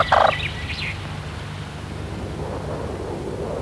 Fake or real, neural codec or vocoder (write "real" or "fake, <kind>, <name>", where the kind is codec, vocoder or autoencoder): real